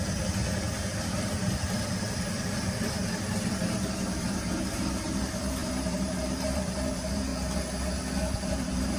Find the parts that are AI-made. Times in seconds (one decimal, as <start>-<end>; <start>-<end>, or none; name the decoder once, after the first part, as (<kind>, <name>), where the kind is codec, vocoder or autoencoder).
0.0-7.3 (vocoder, BigVGAN v2); 8.5-9.0